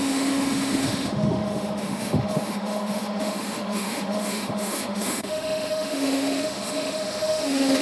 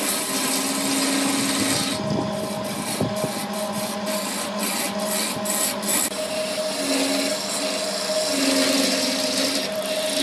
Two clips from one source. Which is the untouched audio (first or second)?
second